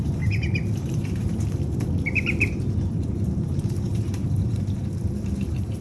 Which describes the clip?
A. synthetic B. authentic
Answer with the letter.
A